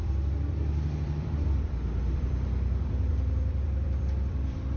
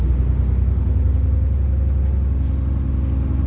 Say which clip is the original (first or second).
second